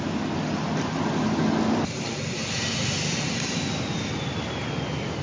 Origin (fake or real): real